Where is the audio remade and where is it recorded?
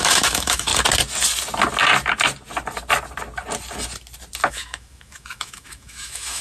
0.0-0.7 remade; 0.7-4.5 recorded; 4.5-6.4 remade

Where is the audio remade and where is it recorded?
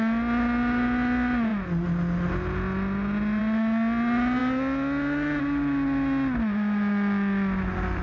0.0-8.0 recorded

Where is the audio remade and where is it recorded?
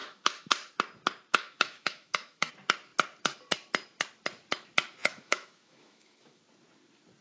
0.0-0.5 remade; 0.5-1.3 recorded; 1.3-2.5 remade; 2.5-5.1 recorded; 5.1-6.4 remade; 6.4-7.2 recorded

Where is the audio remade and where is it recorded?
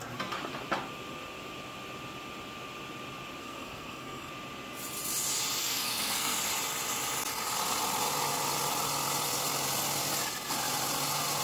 0.0-3.4 recorded; 3.4-4.3 remade; 4.3-5.6 recorded; 5.6-6.5 remade; 6.5-11.4 recorded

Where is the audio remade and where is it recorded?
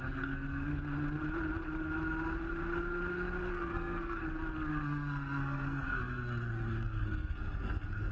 0.0-0.7 remade; 0.7-3.5 recorded; 3.5-4.2 remade; 4.2-4.7 recorded; 4.7-8.1 remade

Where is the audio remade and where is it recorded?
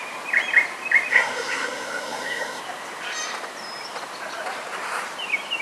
0.0-1.1 recorded; 1.1-2.6 remade; 2.6-5.6 recorded